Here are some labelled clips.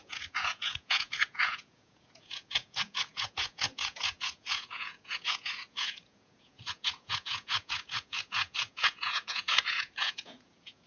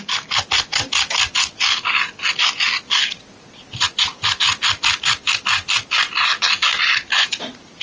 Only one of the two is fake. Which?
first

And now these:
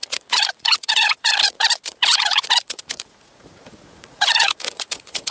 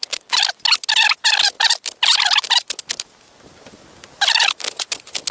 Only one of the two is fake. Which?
first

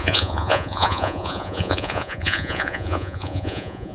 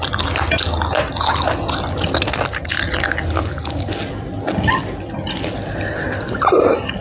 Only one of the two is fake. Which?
first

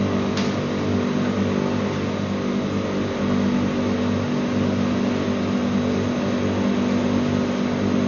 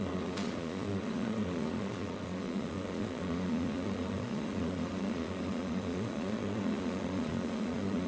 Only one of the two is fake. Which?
second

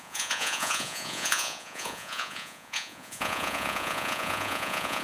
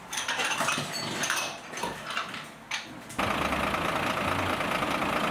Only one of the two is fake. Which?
first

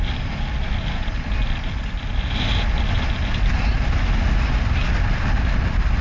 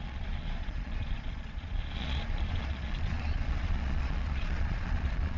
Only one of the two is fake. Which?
second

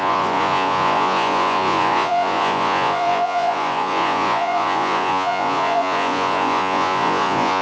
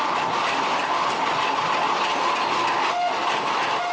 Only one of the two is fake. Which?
first